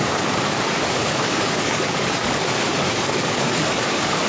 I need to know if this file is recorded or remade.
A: remade